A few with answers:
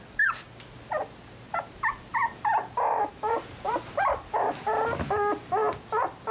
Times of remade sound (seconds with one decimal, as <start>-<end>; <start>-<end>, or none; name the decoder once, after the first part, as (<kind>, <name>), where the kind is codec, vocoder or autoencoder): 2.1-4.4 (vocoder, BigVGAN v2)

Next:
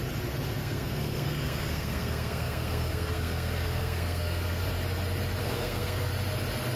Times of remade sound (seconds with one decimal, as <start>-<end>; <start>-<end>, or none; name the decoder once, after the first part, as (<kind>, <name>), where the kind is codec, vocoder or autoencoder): 0.6-4.7 (codec, SNAC); 5.4-6.1

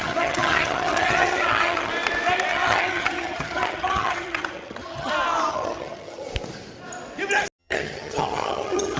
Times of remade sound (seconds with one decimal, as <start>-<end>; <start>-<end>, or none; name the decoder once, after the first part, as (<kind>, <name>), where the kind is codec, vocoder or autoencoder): 0.0-1.9 (vocoder, HiFi-GAN); 2.5-5.1; 5.5-6.3; 7.6-9.0

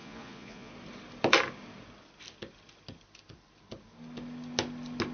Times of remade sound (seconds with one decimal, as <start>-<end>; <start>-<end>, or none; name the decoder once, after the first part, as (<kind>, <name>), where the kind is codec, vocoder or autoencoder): 0.0-0.7 (vocoder, Vocos)